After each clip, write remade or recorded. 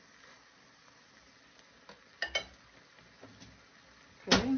recorded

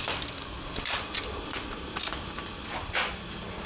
recorded